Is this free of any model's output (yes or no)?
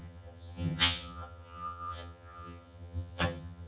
no